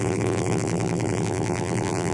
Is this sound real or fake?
fake